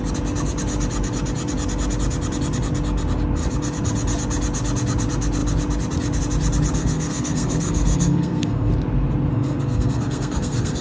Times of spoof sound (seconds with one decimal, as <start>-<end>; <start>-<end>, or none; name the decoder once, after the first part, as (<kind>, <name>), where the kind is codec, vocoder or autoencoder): 6.8-8.7 (codec, SNAC); 9.3-10.8

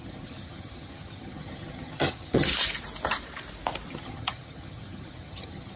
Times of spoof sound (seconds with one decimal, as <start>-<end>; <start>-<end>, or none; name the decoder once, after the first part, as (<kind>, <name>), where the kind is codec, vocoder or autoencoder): 0.0-2.5 (vocoder, HiFi-GAN); 3.9-5.8

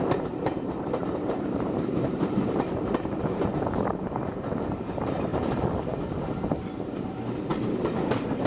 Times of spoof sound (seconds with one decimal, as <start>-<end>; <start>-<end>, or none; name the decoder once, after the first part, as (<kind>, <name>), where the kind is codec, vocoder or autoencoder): 0.0-5.3 (vocoder, BigVGAN v2); 7.0-8.5

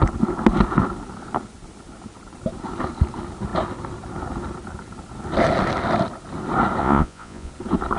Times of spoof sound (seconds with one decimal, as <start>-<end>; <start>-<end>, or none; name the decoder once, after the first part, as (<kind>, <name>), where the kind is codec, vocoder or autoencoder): 6.8-7.5 (vocoder, Vocos)